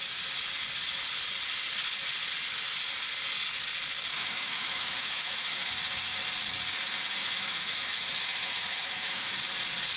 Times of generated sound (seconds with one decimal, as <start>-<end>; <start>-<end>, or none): 4.1-5.7; 7.2-9.3